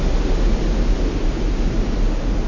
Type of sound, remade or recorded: recorded